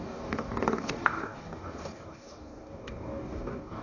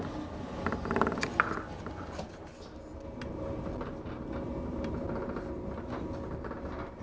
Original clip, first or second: second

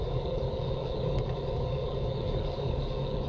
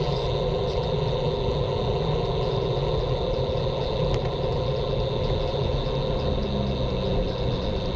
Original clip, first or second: second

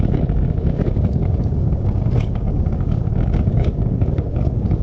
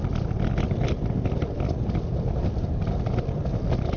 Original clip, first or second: second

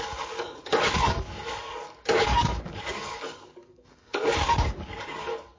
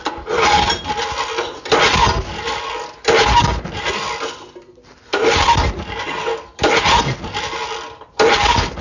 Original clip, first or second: second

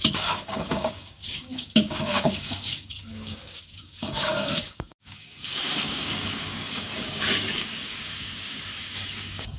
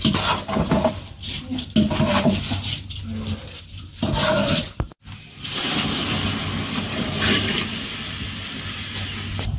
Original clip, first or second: second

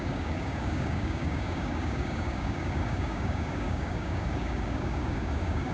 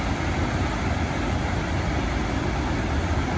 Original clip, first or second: second